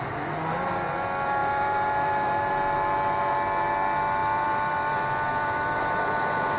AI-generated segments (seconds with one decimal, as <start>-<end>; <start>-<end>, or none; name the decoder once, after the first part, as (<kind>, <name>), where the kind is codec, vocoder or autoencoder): 1.4-2.5 (vocoder, BigVGAN v2); 4.2-6.6